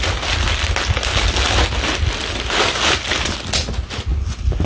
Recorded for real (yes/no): yes